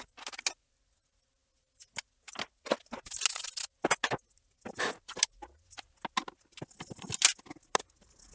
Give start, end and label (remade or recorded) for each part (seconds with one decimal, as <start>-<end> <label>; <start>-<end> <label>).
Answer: 0.0-8.3 recorded